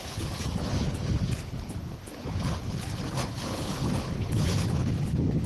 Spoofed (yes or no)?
yes